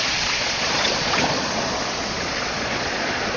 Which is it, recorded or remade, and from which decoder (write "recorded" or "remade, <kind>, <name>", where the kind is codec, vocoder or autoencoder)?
remade, vocoder, Vocos